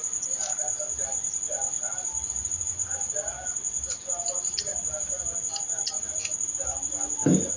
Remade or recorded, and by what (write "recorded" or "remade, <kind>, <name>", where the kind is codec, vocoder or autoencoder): recorded